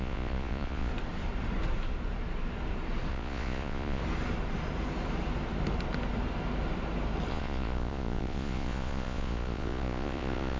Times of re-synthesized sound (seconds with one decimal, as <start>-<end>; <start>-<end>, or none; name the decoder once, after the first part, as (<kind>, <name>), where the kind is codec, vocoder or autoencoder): 0.0-0.9 (vocoder, Vocos); 3.1-4.0; 7.3-10.6